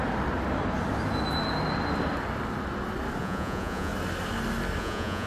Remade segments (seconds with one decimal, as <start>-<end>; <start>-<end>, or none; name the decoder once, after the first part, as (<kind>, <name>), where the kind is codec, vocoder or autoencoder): 3.2-3.9 (vocoder, Vocos); 4.8-5.3